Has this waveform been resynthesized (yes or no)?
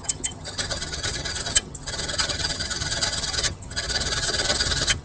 yes